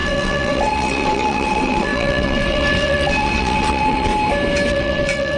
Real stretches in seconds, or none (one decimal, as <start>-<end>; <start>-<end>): 4.1-4.7